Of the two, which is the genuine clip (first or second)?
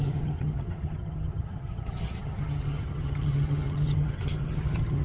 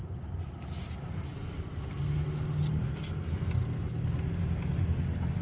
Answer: second